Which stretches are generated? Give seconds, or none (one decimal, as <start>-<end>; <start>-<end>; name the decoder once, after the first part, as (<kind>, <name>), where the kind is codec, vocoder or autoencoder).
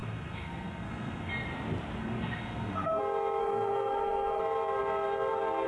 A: 0.0-1.3 (codec, SNAC); 2.0-3.0; 3.4-4.4